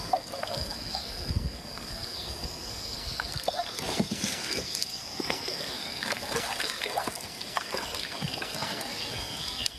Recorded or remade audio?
remade